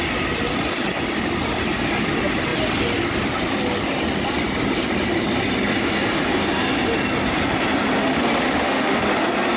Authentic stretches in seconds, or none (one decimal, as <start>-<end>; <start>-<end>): 0.0-8.0; 9.1-9.6